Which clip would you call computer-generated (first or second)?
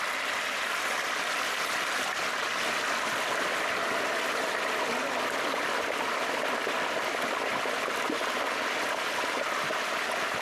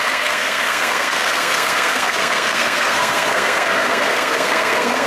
second